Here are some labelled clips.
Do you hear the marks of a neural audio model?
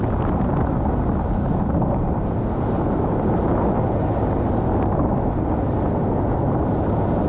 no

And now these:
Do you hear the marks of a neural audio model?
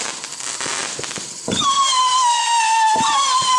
no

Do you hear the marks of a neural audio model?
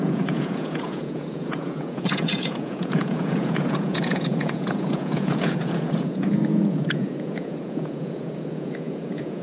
yes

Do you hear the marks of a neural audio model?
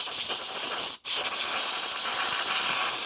no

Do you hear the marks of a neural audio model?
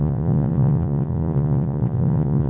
yes